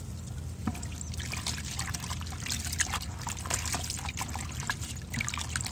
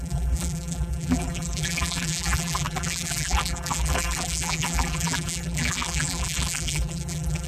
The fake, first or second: second